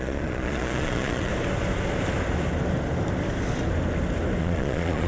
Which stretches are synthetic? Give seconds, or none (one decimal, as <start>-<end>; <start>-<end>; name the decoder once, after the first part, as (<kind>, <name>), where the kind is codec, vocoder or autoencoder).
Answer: 0.0-1.3 (vocoder, Vocos); 4.4-5.1